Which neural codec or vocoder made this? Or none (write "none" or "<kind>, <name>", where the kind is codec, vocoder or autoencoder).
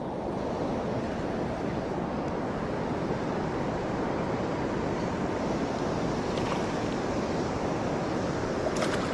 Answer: none